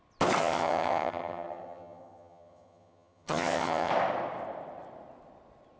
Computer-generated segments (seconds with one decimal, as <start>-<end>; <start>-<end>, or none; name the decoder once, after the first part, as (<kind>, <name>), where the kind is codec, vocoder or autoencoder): 0.4-3.9 (vocoder, HiFi-GAN)